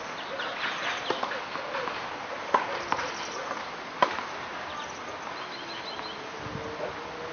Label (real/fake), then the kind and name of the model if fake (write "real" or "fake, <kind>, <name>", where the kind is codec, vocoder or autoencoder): real